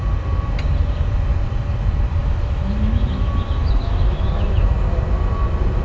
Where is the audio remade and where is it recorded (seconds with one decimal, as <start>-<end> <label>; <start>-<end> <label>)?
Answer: 0.0-2.2 recorded; 2.2-4.7 remade; 4.7-5.8 recorded